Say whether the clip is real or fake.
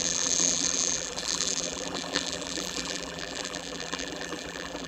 fake